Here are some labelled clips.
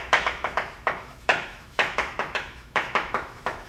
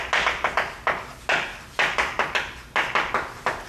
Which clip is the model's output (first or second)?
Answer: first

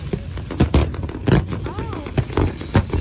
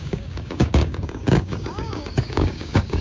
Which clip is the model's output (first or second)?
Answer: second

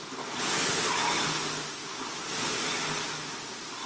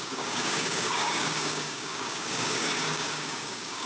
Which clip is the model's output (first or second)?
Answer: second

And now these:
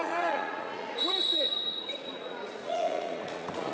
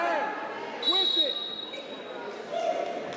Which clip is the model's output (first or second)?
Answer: first